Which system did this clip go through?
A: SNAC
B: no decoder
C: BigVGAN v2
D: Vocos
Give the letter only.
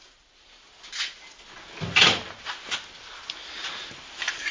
B